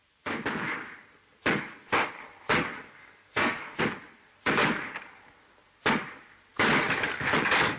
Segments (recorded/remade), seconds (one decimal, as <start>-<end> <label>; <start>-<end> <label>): 0.0-3.0 recorded; 3.0-3.8 remade; 3.8-7.8 recorded